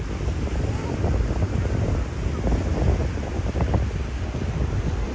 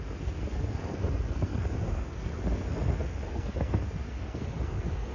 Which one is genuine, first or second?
first